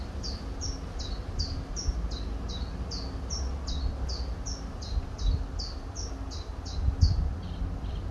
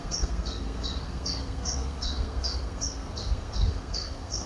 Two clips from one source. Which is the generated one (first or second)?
second